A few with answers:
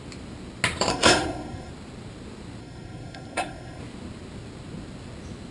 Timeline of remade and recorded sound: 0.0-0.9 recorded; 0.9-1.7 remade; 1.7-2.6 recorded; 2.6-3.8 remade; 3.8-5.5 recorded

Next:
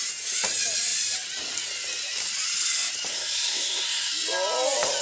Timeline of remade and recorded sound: 0.0-3.1 recorded; 3.1-4.1 remade; 4.1-5.0 recorded

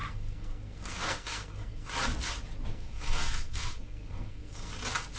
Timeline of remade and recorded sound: 0.0-1.9 remade; 1.9-2.7 recorded; 2.7-4.7 remade; 4.7-5.2 recorded